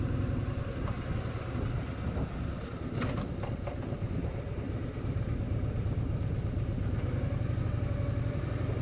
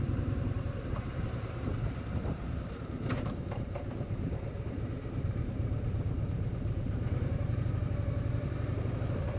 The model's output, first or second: second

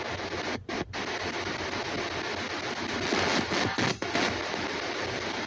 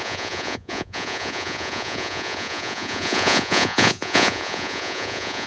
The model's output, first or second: second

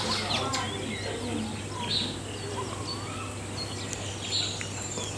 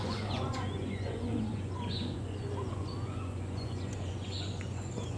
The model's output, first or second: second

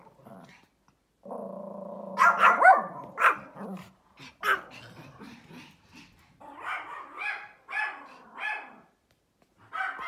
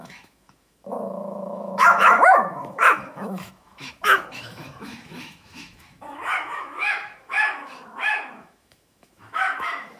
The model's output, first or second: second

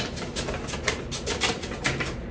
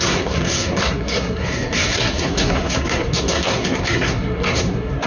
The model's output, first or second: second